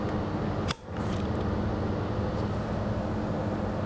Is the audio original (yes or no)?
yes